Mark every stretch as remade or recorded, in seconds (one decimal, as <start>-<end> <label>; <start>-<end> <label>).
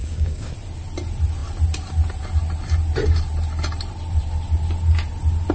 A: 0.0-0.5 remade; 0.5-5.5 recorded